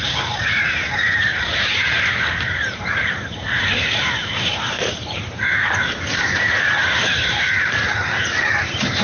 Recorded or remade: remade